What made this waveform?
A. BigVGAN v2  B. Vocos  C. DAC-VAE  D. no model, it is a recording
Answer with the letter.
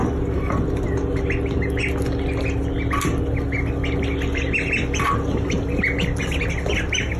D